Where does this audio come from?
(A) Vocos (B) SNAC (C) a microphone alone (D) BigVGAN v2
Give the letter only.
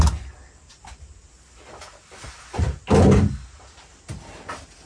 C